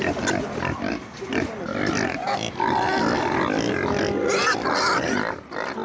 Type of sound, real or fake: real